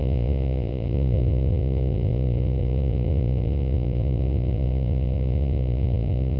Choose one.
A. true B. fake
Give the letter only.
B